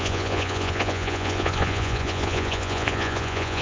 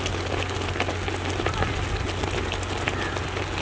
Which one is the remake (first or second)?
first